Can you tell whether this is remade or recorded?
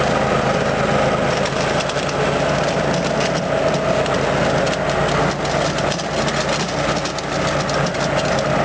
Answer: recorded